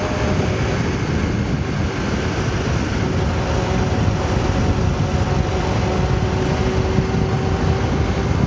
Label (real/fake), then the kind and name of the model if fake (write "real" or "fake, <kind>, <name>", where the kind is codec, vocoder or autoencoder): real